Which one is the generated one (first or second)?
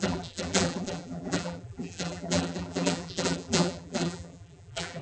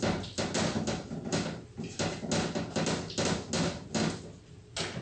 first